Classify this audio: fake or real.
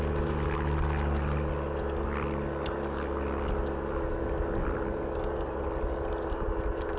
real